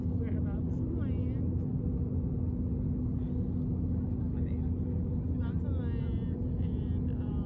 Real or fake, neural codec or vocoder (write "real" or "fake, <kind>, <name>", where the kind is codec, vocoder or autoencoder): real